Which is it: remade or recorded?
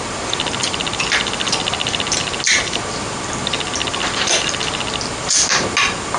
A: recorded